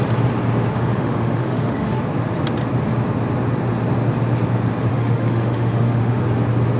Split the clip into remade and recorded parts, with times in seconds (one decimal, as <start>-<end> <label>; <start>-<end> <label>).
0.0-0.7 recorded; 0.7-2.0 remade; 2.0-4.9 recorded; 4.9-6.2 remade; 6.2-6.8 recorded